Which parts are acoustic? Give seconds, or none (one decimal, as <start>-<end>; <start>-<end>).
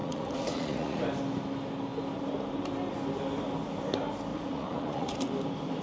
1.0-4.3; 5.2-5.8